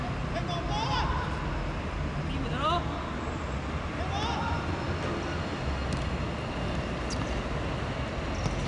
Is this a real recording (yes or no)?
yes